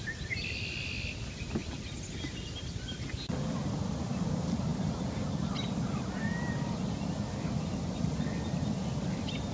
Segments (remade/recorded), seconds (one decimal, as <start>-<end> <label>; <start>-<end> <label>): 0.0-9.5 recorded